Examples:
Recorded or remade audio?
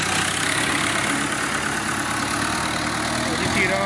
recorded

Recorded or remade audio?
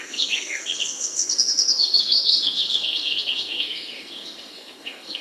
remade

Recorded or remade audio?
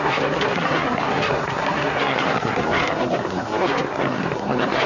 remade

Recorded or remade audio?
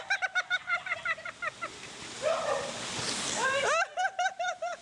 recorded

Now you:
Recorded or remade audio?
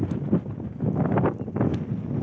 recorded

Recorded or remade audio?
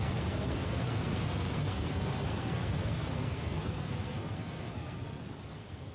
remade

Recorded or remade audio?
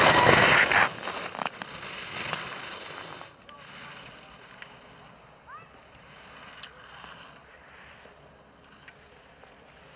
recorded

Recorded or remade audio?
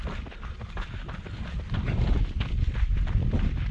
recorded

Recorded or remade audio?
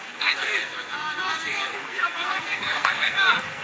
remade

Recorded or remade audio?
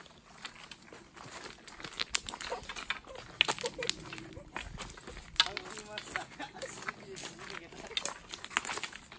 recorded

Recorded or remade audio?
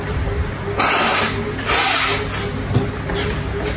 recorded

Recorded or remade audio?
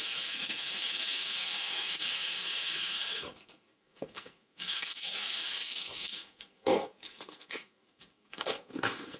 remade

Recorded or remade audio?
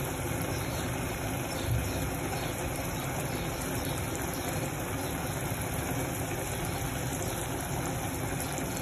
recorded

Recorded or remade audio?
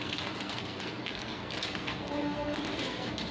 remade